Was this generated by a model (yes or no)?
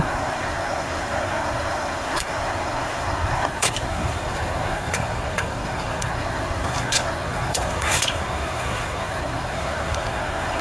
yes